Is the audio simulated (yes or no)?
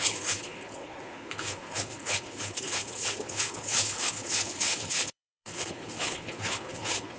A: yes